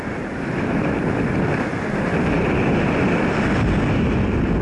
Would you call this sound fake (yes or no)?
no